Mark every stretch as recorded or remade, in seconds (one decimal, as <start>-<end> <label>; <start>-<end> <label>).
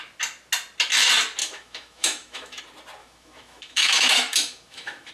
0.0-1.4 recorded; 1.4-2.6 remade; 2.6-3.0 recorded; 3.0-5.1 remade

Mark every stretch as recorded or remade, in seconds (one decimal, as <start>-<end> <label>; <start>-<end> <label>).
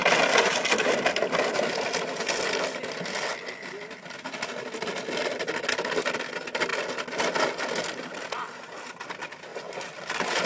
0.0-3.3 remade; 3.3-4.6 recorded; 4.6-6.7 remade; 6.7-8.9 recorded; 8.9-10.5 remade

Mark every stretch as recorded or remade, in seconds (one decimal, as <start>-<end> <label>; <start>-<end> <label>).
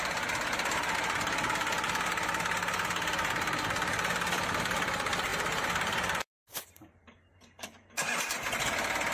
0.0-5.3 recorded; 5.3-8.1 remade; 8.1-9.1 recorded